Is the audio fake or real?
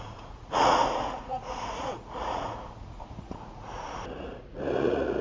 fake